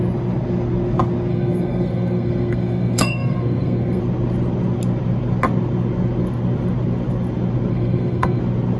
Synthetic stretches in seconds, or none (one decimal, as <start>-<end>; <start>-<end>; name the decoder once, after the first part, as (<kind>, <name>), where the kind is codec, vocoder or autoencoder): 1.3-4.0 (codec, SNAC); 7.7-8.4